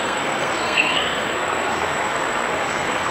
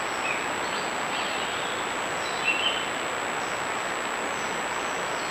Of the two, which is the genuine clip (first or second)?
second